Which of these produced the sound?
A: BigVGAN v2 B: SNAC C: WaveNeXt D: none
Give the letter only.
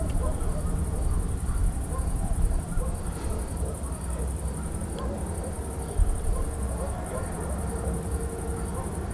D